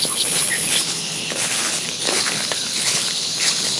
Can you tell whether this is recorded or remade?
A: remade